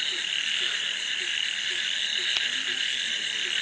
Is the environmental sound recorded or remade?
recorded